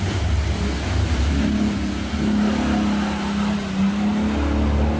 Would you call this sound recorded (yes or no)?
yes